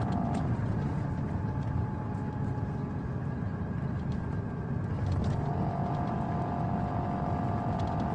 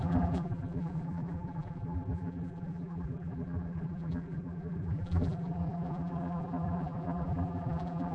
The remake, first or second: second